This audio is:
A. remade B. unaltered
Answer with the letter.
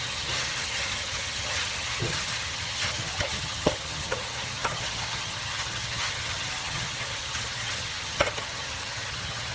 A